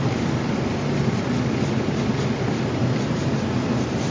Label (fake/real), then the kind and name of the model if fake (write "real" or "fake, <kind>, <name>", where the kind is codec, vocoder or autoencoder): real